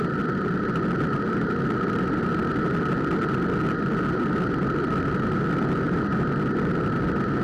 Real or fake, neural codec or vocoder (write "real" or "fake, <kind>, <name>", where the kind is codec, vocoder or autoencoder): real